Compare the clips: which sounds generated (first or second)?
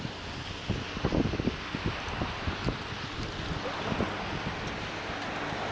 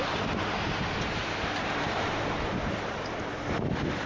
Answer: second